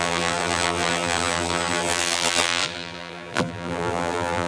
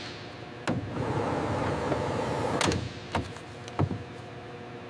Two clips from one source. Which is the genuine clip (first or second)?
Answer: second